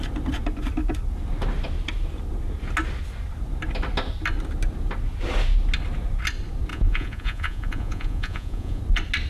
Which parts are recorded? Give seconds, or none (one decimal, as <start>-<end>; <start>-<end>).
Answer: 0.0-6.7; 8.8-9.3